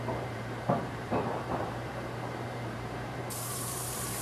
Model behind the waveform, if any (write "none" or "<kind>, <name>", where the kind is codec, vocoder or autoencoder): vocoder, BigVGAN v2